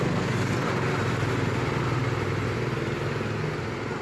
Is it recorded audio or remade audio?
recorded